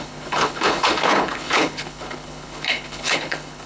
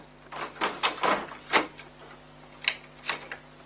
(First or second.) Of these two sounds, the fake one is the first